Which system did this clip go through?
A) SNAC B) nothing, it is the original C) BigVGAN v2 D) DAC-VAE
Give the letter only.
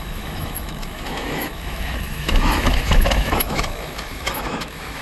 D